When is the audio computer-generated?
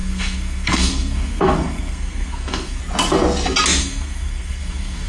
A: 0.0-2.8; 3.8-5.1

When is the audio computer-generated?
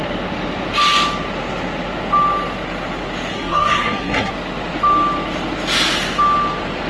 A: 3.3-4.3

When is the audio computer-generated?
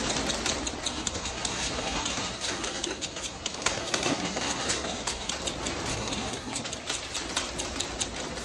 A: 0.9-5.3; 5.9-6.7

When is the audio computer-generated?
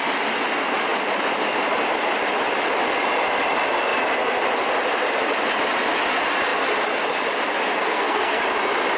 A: 7.8-8.4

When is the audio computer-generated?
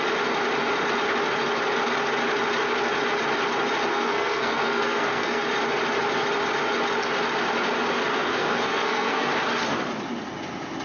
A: 3.9-5.4; 8.1-9.3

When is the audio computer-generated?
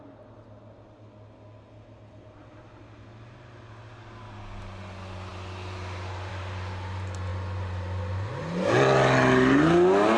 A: none